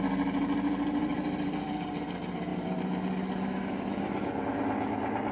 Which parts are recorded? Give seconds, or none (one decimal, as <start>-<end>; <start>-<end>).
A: 0.0-1.1; 1.7-5.3